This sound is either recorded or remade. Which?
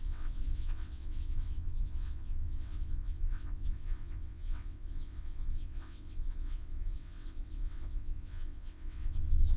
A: remade